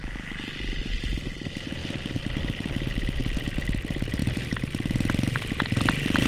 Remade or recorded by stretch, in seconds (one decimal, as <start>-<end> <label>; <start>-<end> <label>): 0.0-6.3 recorded

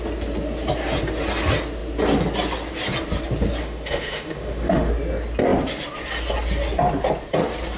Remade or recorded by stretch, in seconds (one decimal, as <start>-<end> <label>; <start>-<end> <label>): 0.0-3.6 recorded; 3.6-4.9 remade; 4.9-7.8 recorded

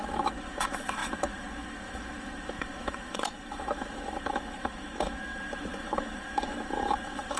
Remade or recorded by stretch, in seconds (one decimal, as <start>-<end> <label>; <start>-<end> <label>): 0.0-7.4 remade

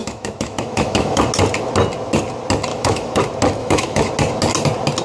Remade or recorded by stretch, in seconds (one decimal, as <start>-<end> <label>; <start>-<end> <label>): 0.0-1.2 remade; 1.2-2.7 recorded; 2.7-3.2 remade; 3.2-3.6 recorded; 3.6-4.1 remade; 4.1-5.0 recorded

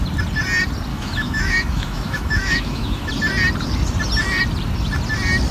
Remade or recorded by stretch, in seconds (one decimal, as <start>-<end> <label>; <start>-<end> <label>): 0.0-0.9 recorded; 0.9-3.1 remade; 3.1-5.5 recorded

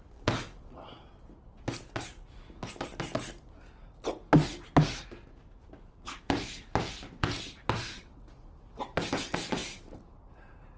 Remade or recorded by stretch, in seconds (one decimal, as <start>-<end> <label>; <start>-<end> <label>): 0.0-10.8 recorded

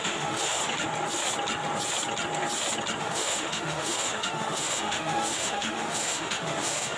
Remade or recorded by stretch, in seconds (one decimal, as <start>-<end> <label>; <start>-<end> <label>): 0.0-0.6 remade; 0.6-3.0 recorded; 3.0-7.0 remade